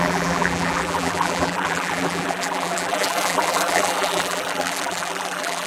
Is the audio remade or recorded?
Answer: remade